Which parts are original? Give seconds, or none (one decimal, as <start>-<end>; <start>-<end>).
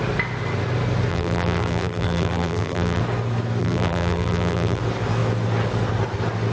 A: 0.0-1.1; 3.0-3.6; 4.8-6.5